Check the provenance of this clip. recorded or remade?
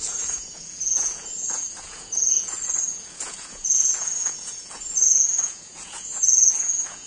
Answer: remade